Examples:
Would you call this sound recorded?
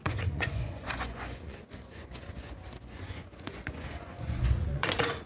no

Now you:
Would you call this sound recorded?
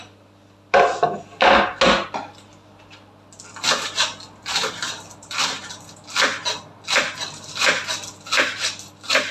yes